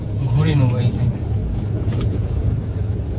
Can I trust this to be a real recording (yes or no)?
no